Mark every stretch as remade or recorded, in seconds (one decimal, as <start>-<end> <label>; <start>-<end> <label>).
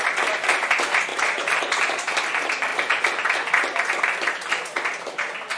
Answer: 0.0-1.1 recorded; 1.1-1.6 remade; 1.6-5.6 recorded